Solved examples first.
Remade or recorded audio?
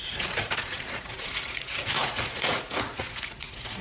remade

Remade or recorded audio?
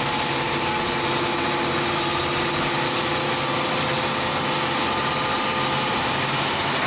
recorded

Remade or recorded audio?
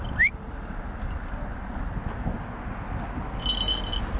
recorded